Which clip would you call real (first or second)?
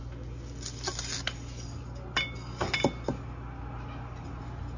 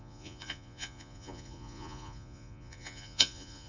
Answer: first